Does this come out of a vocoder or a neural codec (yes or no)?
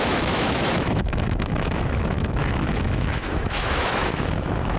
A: yes